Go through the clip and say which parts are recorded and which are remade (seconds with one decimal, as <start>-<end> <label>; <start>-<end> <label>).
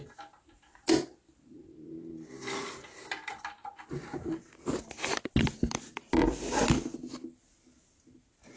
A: 0.0-8.6 recorded